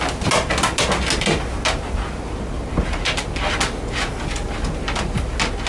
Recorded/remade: recorded